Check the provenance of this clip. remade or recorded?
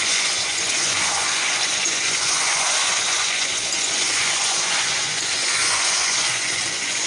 remade